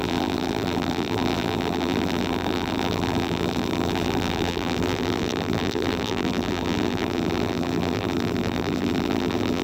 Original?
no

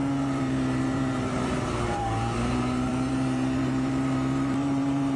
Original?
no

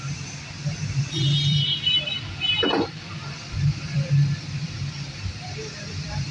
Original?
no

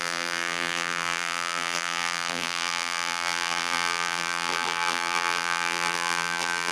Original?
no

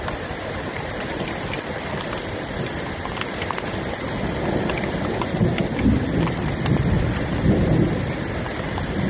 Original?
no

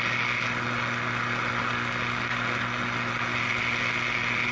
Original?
yes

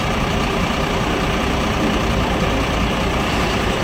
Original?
no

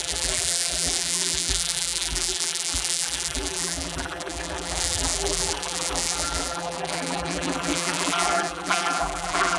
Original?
no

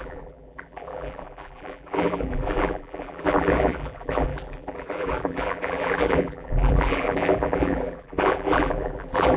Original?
no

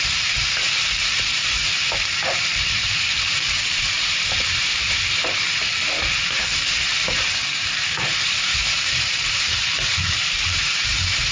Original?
no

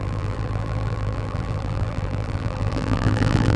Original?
no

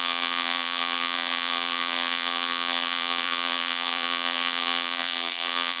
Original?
no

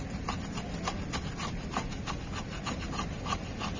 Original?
yes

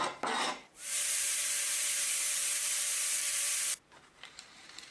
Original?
no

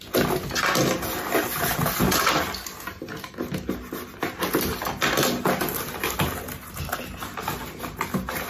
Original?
yes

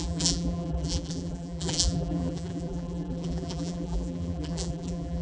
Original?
no